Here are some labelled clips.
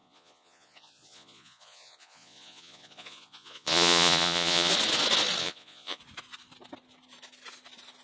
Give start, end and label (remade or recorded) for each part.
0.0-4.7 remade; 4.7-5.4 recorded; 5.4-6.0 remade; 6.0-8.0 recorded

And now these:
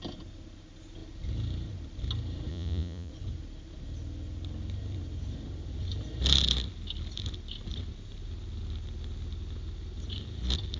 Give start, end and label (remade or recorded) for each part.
0.0-2.5 recorded; 2.5-3.1 remade; 3.1-10.8 recorded

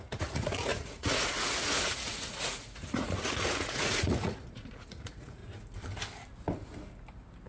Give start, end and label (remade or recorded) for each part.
0.0-5.4 remade; 5.4-7.5 recorded

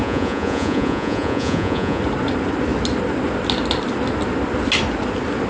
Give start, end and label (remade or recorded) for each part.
0.0-2.0 remade; 2.0-5.5 recorded

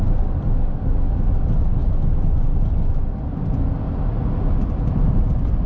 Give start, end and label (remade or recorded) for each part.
0.0-5.7 recorded